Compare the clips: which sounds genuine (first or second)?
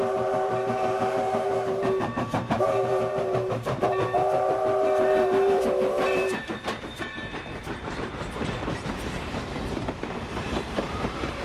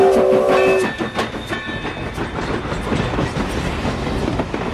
second